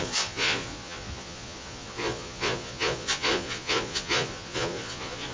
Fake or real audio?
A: fake